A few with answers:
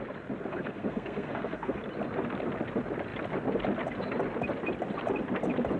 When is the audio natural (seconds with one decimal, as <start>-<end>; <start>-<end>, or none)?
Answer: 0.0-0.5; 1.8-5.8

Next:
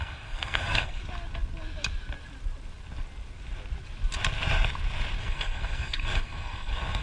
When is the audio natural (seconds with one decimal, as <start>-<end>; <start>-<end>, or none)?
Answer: 1.0-5.2

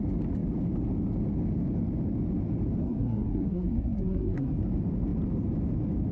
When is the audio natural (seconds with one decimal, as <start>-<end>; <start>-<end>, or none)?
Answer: 0.0-2.8; 4.6-6.1

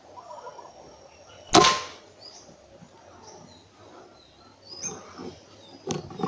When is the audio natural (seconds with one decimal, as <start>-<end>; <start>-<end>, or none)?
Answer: 0.0-6.3

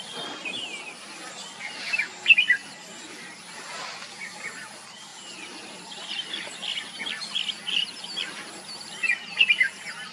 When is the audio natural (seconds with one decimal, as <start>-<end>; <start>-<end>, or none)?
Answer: 0.0-10.1

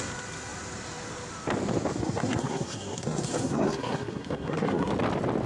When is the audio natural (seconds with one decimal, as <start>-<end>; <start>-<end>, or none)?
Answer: 0.0-2.0; 4.9-5.5

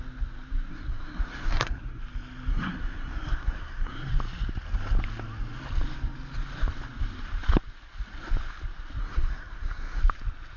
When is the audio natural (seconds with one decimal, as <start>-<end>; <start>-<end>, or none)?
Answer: 0.0-0.7; 2.0-2.5; 4.1-9.0; 10.0-10.6